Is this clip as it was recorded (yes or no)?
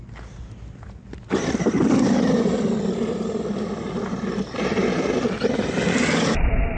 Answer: yes